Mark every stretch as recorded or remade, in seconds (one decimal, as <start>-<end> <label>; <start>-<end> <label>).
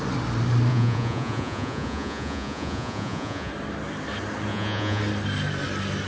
0.0-0.7 recorded; 0.7-3.5 remade; 3.5-4.5 recorded; 4.5-5.0 remade; 5.0-6.1 recorded